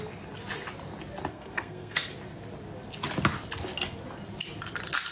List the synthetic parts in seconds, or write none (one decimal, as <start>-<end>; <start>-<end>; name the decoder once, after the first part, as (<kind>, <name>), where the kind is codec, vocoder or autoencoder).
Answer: 1.3-2.1 (codec, SNAC)